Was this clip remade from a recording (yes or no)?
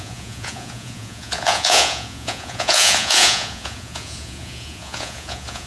yes